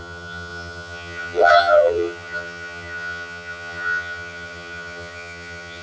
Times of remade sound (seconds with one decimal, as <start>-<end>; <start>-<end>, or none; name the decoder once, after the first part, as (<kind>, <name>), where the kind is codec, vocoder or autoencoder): 0.0-5.8 (vocoder, HiFi-GAN)

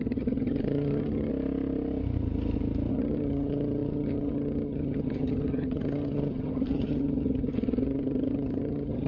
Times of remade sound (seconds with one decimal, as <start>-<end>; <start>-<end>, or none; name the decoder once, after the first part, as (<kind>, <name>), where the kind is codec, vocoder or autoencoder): 0.0-1.3 (vocoder, HiFi-GAN); 2.9-9.1

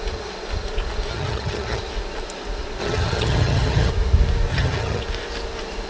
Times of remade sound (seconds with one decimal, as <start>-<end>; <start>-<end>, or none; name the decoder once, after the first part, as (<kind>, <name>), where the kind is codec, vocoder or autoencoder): 1.1-1.8 (vocoder, HiFi-GAN); 2.8-3.9; 4.5-5.0

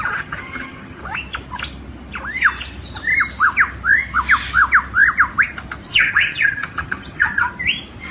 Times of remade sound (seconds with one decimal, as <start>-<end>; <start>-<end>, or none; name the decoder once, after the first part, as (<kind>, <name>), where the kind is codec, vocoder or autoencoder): 0.0-1.0 (vocoder, HiFi-GAN); 5.9-7.5

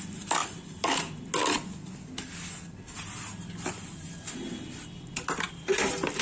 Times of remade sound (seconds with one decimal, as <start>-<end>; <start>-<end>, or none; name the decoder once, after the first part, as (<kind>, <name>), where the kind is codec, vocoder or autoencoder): none